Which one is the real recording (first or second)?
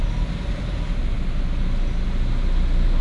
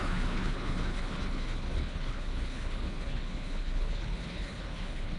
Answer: first